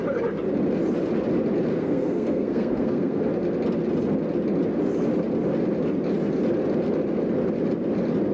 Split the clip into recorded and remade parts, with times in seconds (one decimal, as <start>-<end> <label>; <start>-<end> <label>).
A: 0.0-1.7 recorded; 1.7-3.2 remade; 3.2-8.3 recorded